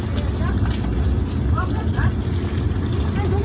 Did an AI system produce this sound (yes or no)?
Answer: no